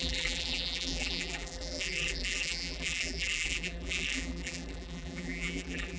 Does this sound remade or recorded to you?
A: remade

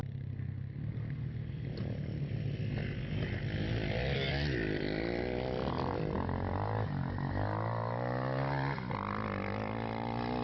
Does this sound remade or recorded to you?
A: recorded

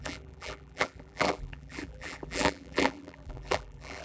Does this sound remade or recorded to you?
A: remade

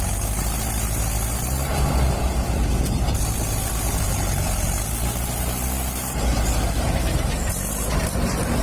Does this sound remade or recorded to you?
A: recorded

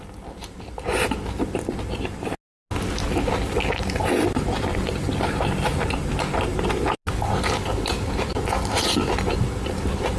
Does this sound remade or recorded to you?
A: recorded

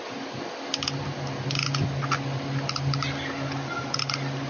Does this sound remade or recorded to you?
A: recorded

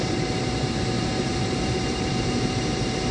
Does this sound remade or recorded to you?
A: remade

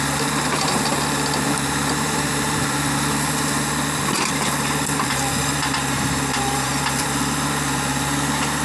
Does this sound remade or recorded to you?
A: remade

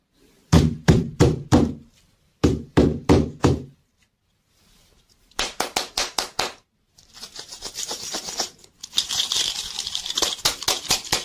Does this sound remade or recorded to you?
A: remade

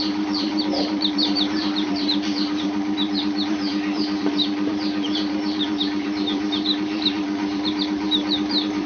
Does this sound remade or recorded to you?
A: remade